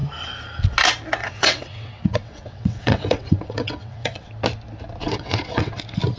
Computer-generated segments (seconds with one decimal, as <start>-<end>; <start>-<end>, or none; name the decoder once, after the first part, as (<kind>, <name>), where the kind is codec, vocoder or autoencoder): 1.2-4.3 (vocoder, WaveNeXt); 5.0-5.8